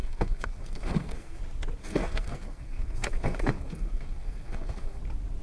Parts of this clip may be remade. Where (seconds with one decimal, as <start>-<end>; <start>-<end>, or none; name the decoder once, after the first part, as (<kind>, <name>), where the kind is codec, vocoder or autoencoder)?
0.0-1.4 (codec, SNAC); 1.8-5.0